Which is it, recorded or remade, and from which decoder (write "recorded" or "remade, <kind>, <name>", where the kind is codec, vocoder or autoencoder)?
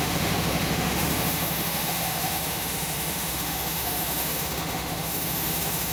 remade, autoencoder, DAC-VAE